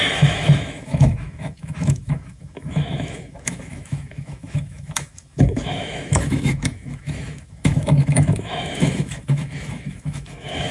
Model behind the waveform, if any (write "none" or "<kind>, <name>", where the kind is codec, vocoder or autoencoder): autoencoder, DAC-VAE